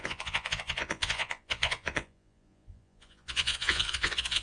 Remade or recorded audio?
remade